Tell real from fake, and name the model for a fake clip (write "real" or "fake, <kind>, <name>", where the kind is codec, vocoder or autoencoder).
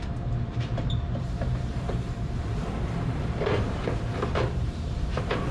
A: fake, vocoder, BigVGAN v2